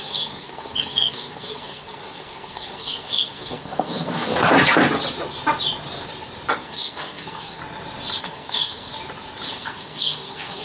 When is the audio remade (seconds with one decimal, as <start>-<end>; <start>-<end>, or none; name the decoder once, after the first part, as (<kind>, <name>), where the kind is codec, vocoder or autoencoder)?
0.0-4.3 (codec, SNAC); 6.5-7.6; 8.2-8.9; 9.5-10.6